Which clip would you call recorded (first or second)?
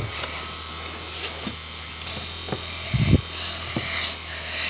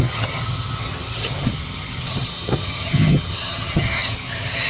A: first